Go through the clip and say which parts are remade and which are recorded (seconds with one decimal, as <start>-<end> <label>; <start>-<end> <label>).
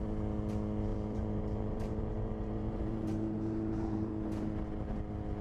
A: 0.0-0.9 recorded; 0.9-4.1 remade; 4.1-5.4 recorded